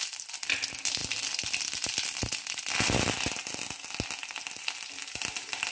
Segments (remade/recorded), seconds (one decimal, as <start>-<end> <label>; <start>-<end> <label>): 0.0-5.7 recorded